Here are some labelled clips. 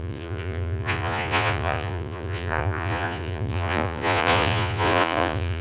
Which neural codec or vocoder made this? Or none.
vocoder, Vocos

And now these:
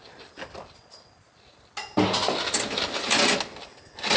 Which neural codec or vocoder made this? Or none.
none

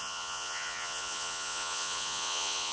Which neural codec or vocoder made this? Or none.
vocoder, Vocos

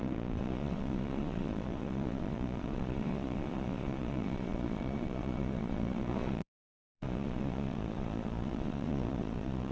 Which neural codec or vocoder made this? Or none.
vocoder, Vocos